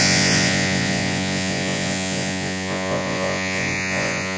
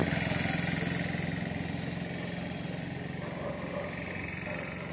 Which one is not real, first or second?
first